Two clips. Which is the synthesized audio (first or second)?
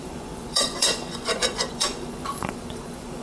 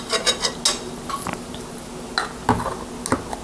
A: first